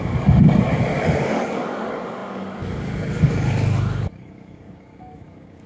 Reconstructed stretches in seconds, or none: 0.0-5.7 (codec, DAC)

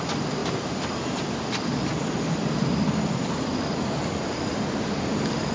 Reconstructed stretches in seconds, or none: none

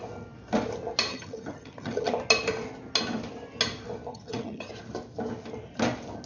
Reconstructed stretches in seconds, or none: 1.1-2.1 (vocoder, HiFi-GAN); 4.1-4.7

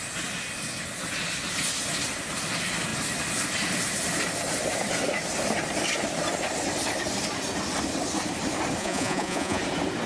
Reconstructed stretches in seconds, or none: 8.8-9.6 (vocoder, Vocos)

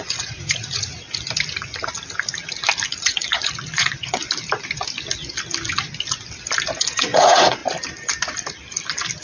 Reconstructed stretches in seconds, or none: 0.0-0.9 (vocoder, Vocos); 2.9-4.2; 6.8-7.6